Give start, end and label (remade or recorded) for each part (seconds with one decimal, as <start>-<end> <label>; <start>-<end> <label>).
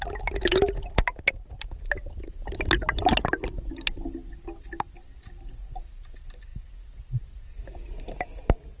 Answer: 0.0-8.8 recorded